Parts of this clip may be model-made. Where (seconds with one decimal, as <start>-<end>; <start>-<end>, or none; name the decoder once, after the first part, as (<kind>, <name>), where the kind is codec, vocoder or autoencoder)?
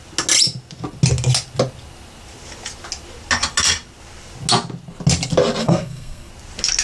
5.6-6.3 (codec, SNAC)